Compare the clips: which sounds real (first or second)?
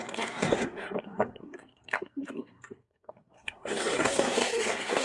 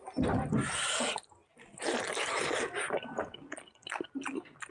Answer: second